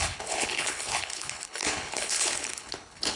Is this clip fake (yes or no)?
yes